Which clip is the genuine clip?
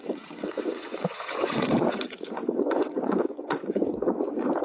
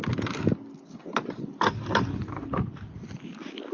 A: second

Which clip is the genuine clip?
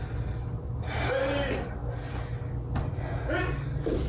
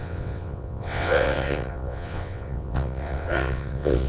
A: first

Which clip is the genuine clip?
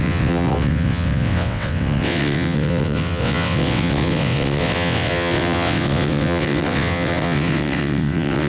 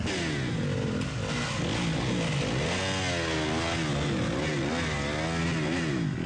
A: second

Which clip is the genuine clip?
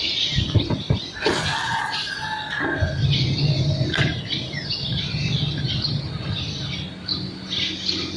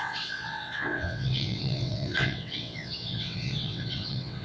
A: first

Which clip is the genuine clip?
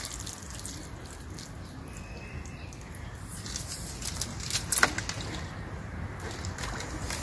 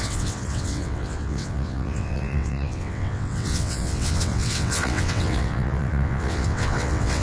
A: first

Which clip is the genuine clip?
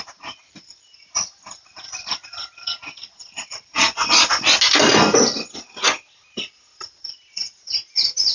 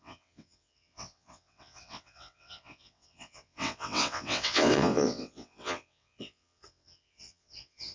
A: first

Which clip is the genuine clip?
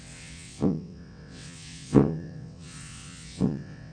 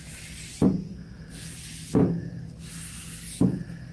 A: second